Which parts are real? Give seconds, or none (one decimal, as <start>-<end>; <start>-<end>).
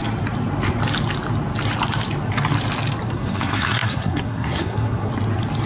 0.0-3.1; 5.1-5.7